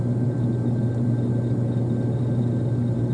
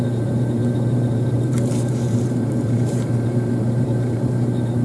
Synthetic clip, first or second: second